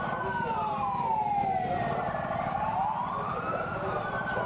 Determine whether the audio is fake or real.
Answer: real